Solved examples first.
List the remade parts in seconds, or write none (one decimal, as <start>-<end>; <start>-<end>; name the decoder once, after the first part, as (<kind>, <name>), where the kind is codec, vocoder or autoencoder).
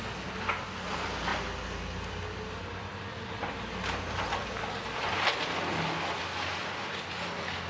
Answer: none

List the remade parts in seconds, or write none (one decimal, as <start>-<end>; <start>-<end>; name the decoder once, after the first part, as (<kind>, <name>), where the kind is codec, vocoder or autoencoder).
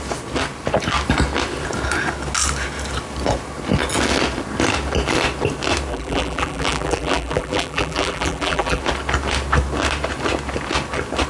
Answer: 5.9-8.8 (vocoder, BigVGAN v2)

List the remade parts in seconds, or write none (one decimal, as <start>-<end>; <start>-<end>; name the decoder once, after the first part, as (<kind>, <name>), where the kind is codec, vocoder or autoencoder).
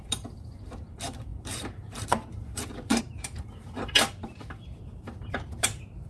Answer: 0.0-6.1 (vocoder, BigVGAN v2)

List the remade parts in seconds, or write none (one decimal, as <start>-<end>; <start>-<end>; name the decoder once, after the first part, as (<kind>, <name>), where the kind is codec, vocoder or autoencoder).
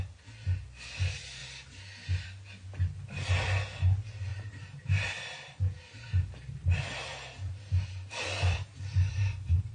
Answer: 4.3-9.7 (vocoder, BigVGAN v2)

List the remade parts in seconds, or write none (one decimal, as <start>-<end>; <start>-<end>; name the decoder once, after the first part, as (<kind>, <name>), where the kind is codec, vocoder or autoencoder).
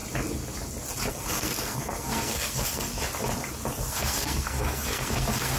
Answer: 1.1-2.9 (codec, SNAC); 3.8-5.6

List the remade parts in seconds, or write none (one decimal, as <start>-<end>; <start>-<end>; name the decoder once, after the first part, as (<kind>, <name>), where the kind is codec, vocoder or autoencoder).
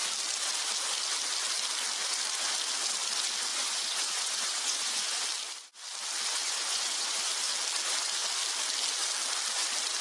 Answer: 3.5-5.2 (vocoder, Vocos); 6.4-7.3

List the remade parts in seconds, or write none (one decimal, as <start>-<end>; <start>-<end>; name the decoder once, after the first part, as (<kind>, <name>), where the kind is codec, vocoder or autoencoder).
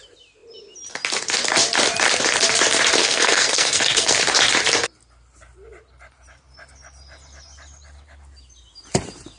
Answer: 3.0-4.2 (codec, SNAC)